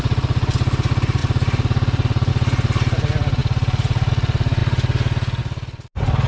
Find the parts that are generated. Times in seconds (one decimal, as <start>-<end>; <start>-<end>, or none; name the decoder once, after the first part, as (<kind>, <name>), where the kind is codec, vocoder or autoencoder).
1.2-2.3 (vocoder, BigVGAN v2); 3.4-4.1